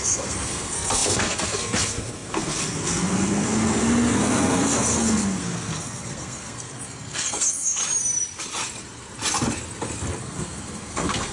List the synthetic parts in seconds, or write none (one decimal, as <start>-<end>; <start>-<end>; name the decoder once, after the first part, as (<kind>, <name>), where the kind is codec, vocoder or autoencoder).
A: 0.0-7.8 (codec, SNAC); 10.2-11.3

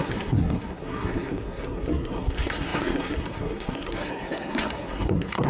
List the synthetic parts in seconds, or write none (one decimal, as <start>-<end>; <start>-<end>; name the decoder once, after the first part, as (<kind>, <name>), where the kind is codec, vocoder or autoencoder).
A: 0.0-5.5 (codec, SNAC)

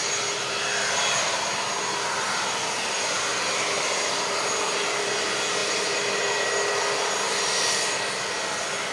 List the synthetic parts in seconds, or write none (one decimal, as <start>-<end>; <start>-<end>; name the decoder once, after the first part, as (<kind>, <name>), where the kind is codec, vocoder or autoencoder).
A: none

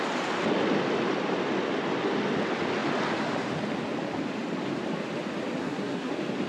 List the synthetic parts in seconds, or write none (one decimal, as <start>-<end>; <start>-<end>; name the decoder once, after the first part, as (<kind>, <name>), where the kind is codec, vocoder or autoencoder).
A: 5.6-6.1 (codec, SNAC)

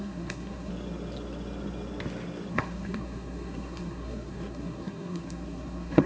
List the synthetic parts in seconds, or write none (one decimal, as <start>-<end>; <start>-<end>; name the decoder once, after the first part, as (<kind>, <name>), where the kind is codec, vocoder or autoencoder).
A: 0.0-0.7 (codec, SNAC); 2.5-6.1

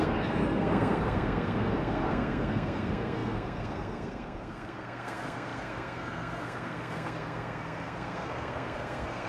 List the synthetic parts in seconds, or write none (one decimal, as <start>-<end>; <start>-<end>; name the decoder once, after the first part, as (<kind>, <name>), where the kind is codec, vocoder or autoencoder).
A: 0.0-9.3 (codec, SNAC)

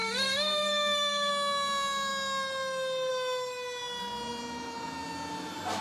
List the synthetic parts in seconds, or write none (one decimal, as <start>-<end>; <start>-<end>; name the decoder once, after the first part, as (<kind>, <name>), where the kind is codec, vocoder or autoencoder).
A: 0.0-1.3 (codec, SNAC)

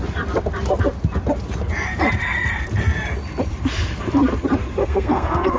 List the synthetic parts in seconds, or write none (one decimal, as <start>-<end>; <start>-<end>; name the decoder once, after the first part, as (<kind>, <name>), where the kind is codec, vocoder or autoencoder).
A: 4.8-5.6 (codec, SNAC)